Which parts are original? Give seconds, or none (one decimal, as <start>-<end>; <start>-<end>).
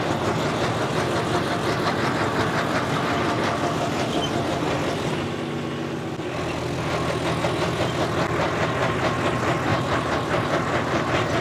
0.0-9.7; 11.0-11.4